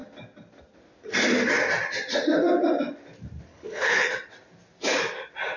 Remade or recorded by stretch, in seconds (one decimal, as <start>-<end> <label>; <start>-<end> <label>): 0.0-3.5 recorded; 3.5-4.1 remade; 4.1-5.6 recorded